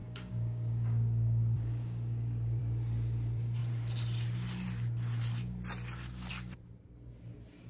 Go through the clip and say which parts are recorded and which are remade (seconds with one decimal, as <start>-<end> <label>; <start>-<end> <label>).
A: 0.0-2.6 remade; 2.6-7.7 recorded